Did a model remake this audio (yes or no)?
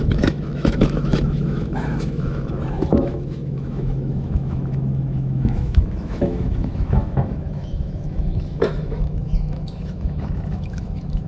yes